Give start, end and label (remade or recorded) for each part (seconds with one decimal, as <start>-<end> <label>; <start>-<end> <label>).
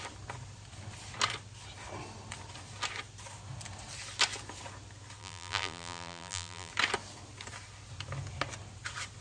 0.0-5.2 recorded; 5.2-6.7 remade; 6.7-9.2 recorded